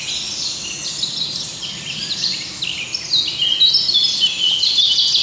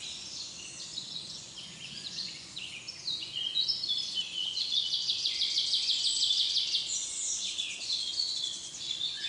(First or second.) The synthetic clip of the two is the second